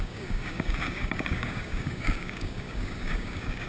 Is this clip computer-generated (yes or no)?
yes